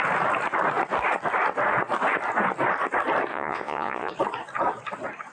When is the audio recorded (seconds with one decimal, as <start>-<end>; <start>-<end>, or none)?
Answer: 0.0-3.3; 4.1-5.3